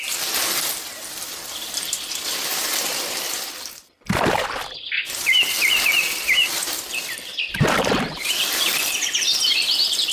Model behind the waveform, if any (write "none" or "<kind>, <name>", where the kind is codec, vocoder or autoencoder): vocoder, BigVGAN v2